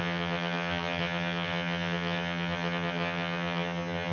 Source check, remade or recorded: remade